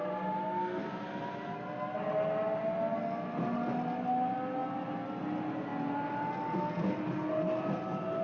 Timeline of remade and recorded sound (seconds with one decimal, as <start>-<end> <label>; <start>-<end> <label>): 0.0-8.2 recorded